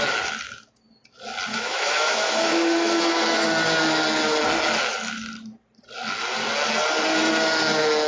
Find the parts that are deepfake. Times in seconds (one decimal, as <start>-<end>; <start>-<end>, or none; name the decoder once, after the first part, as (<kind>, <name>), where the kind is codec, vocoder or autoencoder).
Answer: 1.5-3.0 (autoencoder, DAC-VAE)